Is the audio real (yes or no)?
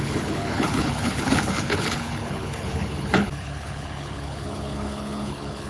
no